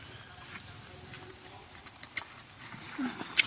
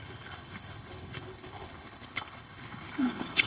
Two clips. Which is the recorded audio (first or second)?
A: first